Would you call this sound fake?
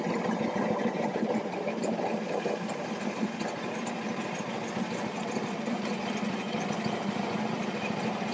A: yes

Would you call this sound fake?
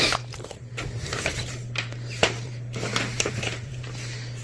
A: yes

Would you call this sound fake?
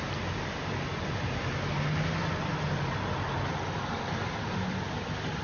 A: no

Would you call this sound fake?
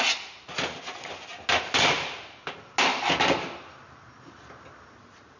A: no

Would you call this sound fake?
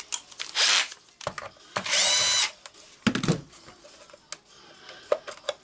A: no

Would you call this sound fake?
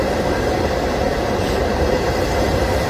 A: yes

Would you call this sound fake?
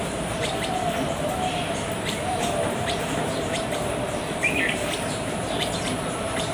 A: yes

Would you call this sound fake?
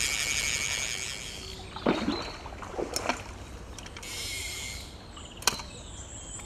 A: no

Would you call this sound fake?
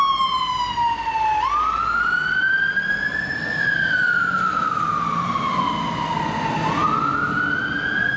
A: no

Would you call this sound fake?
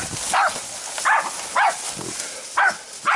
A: no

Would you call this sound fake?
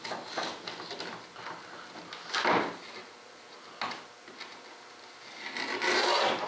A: no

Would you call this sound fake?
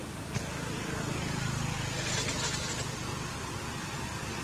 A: no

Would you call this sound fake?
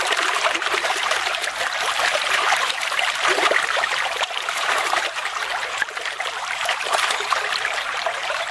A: yes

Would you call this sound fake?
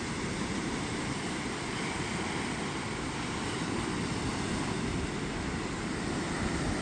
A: no